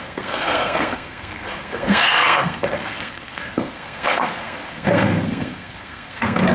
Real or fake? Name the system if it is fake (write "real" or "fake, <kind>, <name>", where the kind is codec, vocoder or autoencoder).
fake, codec, SNAC